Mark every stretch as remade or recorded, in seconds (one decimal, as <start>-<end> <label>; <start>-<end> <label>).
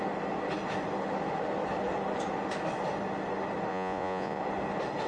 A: 0.0-3.7 recorded; 3.7-4.4 remade; 4.4-5.1 recorded